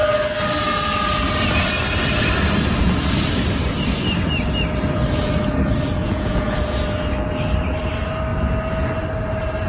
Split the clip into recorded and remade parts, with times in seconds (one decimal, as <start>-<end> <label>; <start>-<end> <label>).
0.0-6.0 recorded; 6.0-6.8 remade; 6.8-9.7 recorded